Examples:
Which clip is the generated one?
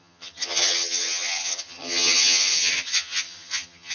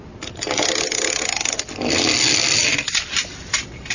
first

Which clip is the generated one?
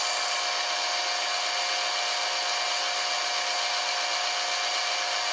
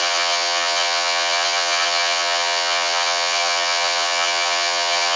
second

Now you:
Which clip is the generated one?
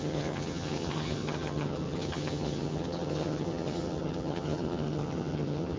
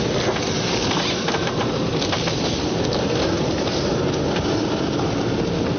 first